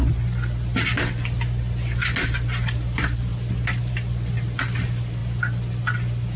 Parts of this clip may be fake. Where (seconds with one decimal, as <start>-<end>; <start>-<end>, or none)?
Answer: none